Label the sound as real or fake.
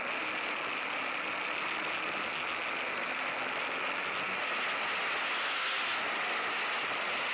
real